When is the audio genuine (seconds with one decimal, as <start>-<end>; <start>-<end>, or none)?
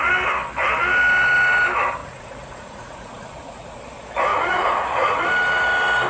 0.0-2.0; 3.8-4.3; 5.3-6.1